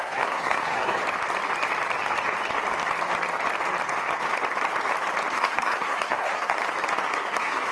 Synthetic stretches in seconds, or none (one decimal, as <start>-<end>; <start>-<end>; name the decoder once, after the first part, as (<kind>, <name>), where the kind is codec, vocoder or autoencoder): 0.0-1.0 (codec, SNAC); 5.3-6.6; 7.1-7.7